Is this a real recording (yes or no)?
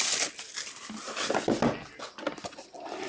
yes